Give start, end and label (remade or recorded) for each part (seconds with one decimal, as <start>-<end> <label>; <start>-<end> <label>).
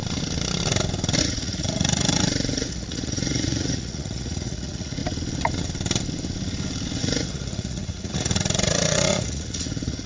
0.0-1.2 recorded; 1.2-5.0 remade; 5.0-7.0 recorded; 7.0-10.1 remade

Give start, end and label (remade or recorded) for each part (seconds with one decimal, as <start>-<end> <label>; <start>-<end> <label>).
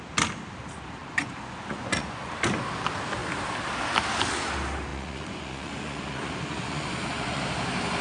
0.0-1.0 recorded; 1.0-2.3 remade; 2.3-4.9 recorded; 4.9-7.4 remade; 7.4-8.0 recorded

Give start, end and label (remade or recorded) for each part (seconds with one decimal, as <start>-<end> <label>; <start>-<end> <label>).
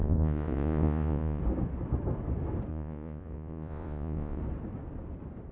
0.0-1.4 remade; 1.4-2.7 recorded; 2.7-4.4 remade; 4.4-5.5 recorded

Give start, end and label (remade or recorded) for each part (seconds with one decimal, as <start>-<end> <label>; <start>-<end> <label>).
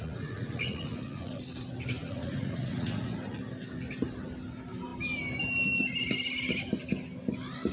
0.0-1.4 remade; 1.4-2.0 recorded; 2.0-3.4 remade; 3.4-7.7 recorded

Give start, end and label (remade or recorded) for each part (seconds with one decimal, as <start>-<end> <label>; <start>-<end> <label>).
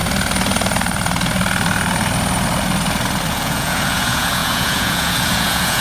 0.0-3.3 recorded; 3.3-5.8 remade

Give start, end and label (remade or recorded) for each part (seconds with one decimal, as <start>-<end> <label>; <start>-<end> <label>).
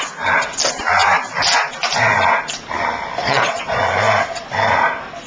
0.0-3.2 recorded; 3.2-3.8 remade; 3.8-5.3 recorded